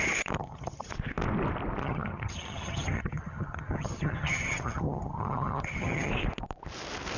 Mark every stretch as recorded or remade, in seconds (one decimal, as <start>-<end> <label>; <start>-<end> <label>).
0.0-0.4 recorded; 0.4-0.9 remade; 0.9-1.8 recorded; 1.8-6.1 remade; 6.1-7.2 recorded